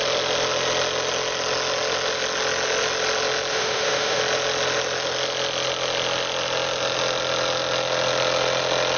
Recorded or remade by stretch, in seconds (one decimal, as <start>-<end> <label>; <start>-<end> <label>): 0.0-3.5 recorded; 3.5-4.2 remade; 4.2-9.0 recorded